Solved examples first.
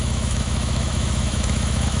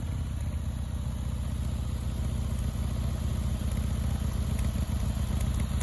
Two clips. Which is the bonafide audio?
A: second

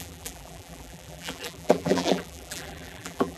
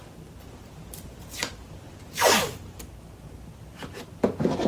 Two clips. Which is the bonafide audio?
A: second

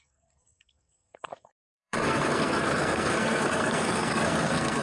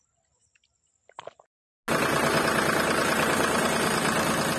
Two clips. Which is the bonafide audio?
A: second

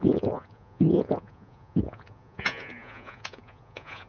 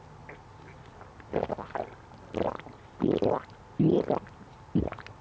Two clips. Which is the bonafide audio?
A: second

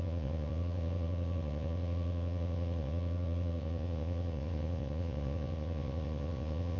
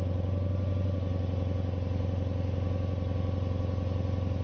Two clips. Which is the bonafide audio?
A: second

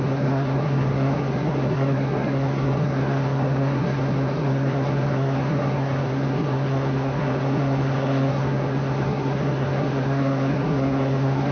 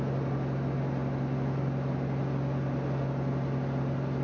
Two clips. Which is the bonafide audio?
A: second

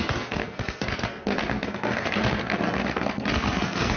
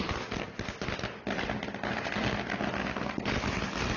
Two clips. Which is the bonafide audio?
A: second